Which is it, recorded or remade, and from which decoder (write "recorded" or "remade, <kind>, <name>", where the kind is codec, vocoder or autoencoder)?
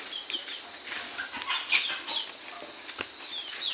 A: recorded